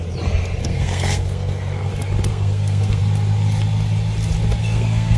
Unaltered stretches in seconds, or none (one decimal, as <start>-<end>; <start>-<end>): 0.0-0.6; 1.9-2.3; 3.0-4.6